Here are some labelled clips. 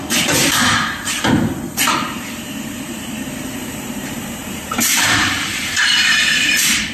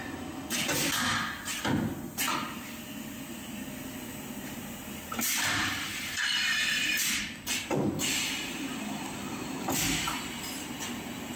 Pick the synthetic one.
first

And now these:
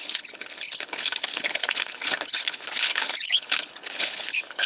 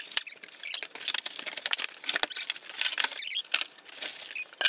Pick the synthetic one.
first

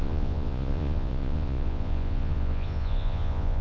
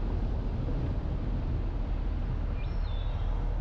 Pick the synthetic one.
first